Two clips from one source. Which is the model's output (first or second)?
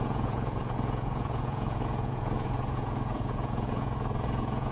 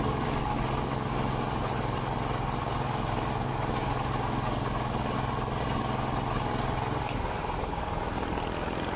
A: first